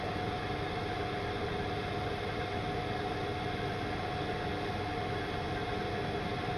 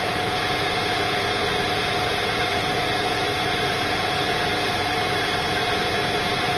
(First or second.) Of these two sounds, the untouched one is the first